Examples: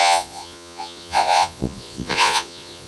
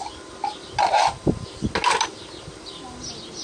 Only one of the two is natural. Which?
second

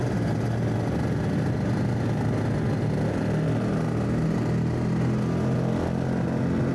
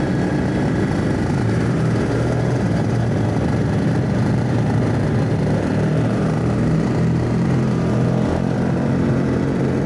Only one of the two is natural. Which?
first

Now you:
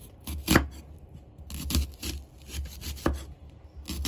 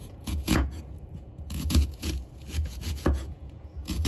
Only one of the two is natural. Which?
first